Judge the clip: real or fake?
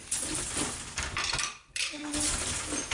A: fake